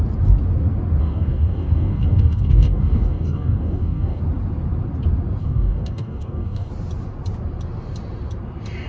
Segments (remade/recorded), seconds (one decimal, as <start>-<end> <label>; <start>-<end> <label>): 0.0-1.0 recorded; 1.0-4.2 remade; 4.2-5.4 recorded; 5.4-6.7 remade; 6.7-8.9 recorded